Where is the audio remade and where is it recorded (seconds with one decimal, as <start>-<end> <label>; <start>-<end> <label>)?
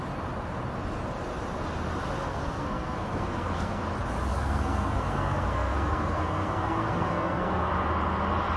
0.0-2.3 recorded; 2.3-3.8 remade; 3.8-4.3 recorded; 4.3-7.7 remade; 7.7-8.6 recorded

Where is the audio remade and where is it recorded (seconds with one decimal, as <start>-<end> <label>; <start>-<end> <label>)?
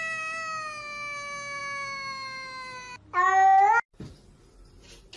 0.0-5.2 recorded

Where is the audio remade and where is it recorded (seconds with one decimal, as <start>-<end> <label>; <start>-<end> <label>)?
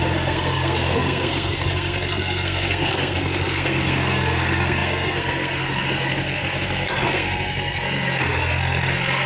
0.0-9.3 remade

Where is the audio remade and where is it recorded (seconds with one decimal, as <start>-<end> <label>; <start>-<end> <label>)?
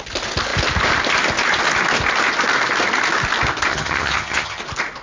0.0-3.7 recorded; 3.7-4.6 remade; 4.6-5.0 recorded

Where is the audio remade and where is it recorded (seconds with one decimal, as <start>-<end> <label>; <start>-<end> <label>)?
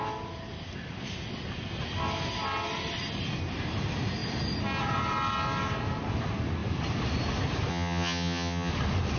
0.0-7.7 recorded; 7.7-8.7 remade; 8.7-9.2 recorded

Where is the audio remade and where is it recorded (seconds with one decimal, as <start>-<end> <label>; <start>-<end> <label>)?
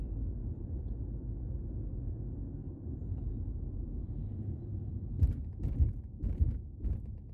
0.0-0.4 recorded; 0.4-1.0 remade; 1.0-2.6 recorded; 2.6-5.5 remade; 5.5-7.3 recorded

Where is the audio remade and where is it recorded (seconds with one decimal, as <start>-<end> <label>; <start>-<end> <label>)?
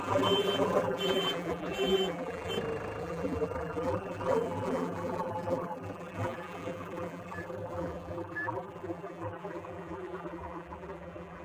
0.0-2.5 remade; 2.5-3.0 recorded; 3.0-11.4 remade